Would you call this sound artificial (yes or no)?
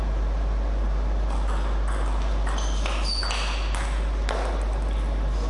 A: no